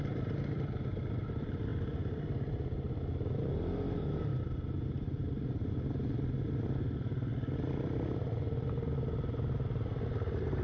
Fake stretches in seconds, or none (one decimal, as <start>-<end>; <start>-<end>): none